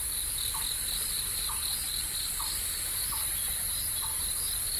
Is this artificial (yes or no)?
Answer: no